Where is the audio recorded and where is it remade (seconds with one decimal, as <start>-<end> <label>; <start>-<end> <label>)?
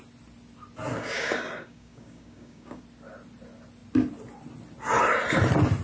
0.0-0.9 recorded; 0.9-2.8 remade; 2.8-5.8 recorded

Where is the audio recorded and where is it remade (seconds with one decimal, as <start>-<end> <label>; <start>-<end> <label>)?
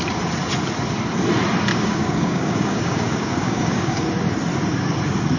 0.0-1.7 recorded; 1.7-4.1 remade; 4.1-5.4 recorded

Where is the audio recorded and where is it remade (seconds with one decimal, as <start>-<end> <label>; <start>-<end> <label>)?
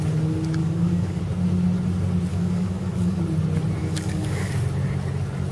0.0-0.6 recorded; 0.6-1.2 remade; 1.2-2.3 recorded; 2.3-3.2 remade; 3.2-3.8 recorded; 3.8-4.5 remade; 4.5-5.5 recorded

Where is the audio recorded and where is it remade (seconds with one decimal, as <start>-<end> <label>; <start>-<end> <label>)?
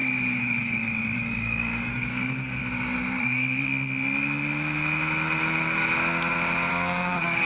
0.0-2.6 remade; 2.6-3.2 recorded; 3.2-3.7 remade; 3.7-6.7 recorded; 6.7-7.5 remade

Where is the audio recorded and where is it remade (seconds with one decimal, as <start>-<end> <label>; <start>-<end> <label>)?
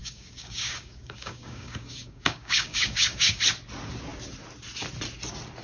0.0-3.4 remade; 3.4-5.6 recorded